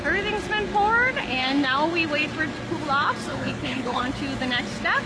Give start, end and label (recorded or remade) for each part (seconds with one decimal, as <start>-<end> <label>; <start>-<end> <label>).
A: 0.0-3.3 recorded; 3.3-4.0 remade; 4.0-5.1 recorded